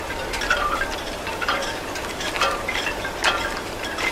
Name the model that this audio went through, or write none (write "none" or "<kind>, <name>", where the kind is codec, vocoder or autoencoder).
vocoder, BigVGAN v2